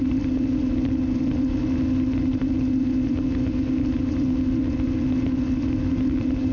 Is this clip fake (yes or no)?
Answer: no